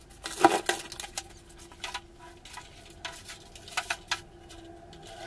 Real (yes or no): yes